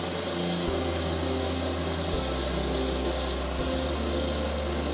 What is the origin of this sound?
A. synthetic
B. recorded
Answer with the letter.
B